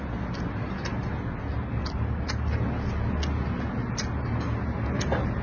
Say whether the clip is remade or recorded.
recorded